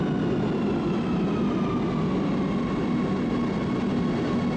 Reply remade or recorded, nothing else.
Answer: recorded